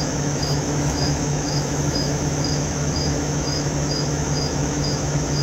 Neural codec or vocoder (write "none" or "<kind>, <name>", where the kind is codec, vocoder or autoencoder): autoencoder, DAC-VAE